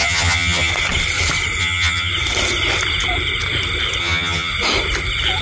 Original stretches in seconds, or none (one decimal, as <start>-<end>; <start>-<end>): 0.7-1.6; 2.1-4.0; 4.5-5.4